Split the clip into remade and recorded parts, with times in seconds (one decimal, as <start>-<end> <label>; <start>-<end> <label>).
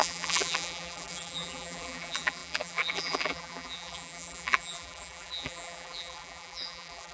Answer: 0.0-7.1 remade